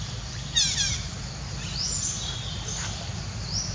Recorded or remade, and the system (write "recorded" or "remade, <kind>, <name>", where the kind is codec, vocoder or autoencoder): recorded